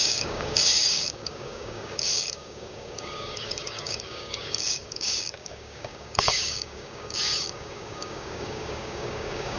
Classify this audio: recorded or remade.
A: remade